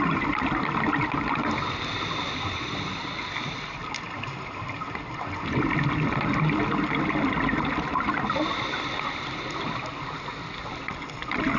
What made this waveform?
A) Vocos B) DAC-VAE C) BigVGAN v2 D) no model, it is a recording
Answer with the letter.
D